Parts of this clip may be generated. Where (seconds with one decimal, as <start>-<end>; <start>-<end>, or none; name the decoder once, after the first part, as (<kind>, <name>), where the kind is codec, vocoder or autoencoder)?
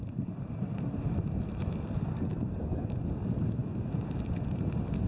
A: 2.1-2.9 (codec, SNAC)